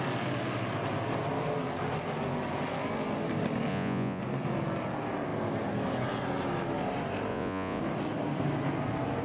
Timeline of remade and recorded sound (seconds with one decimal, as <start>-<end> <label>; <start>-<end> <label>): 0.0-3.7 recorded; 3.7-4.2 remade; 4.2-7.3 recorded; 7.3-7.8 remade; 7.8-9.2 recorded